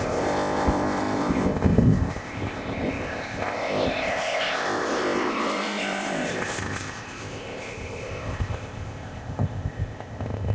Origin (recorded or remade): remade